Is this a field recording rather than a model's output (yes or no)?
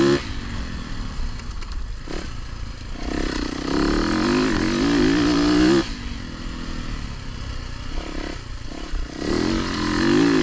yes